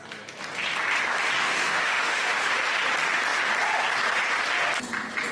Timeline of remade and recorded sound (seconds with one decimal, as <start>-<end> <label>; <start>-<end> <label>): 0.0-1.4 recorded; 1.4-2.5 remade; 2.5-5.3 recorded